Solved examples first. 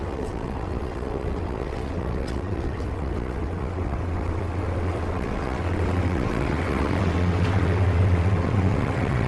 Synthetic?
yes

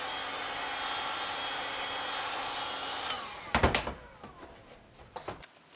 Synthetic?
no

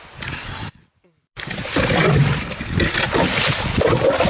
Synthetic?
no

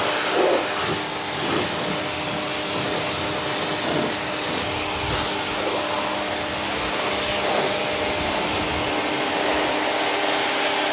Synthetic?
no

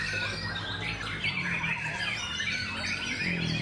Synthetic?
no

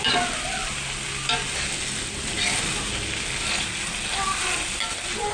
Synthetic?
no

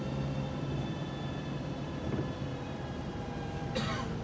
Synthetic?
yes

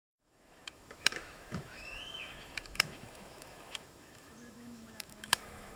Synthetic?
yes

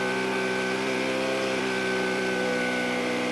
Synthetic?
yes